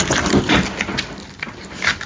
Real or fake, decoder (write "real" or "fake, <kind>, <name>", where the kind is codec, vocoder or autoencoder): real